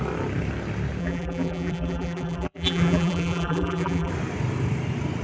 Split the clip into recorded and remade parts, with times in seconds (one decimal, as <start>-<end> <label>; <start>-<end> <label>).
0.0-1.0 recorded; 1.0-4.1 remade; 4.1-5.2 recorded